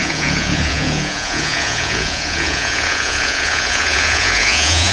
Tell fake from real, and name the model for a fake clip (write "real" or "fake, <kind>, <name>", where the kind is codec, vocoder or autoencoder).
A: fake, vocoder, Vocos